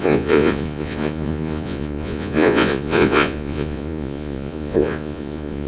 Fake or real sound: fake